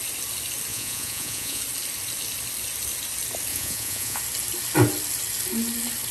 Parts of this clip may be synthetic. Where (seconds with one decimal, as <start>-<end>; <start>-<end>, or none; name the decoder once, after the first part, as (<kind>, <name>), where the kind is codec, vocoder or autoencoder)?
0.7-1.6 (vocoder, Vocos); 3.5-4.2